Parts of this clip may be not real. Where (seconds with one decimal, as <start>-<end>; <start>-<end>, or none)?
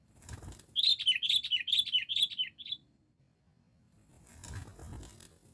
none